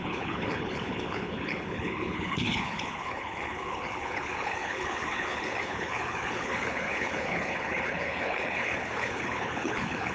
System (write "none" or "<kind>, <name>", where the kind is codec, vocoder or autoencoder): codec, HILCodec